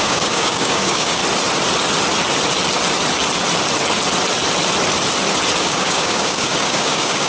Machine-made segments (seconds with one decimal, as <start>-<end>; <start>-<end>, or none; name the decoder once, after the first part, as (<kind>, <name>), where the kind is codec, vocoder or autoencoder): 0.0-1.2 (codec, DAC); 5.6-7.3